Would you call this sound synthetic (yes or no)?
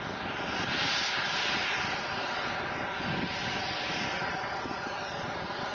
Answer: no